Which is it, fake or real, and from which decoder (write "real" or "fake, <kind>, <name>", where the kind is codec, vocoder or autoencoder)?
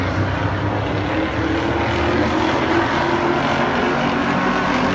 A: real